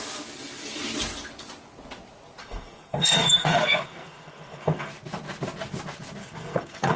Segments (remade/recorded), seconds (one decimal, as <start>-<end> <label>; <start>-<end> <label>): 0.0-2.4 recorded; 2.4-4.9 remade; 4.9-6.2 recorded; 6.2-7.0 remade